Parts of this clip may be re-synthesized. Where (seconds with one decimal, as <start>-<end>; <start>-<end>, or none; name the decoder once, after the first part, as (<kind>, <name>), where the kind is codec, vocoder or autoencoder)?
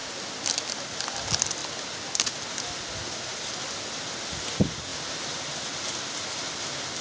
none